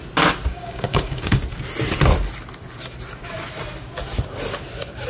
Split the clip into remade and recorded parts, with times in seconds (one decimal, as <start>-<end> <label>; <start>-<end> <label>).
0.0-0.5 recorded; 0.5-1.4 remade; 1.4-5.1 recorded